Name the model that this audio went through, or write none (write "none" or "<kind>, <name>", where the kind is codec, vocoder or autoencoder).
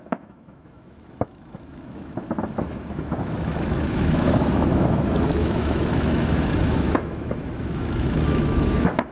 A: autoencoder, DAC-VAE